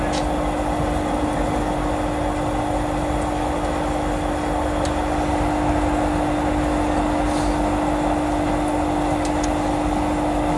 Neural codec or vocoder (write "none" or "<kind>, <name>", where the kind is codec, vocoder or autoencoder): none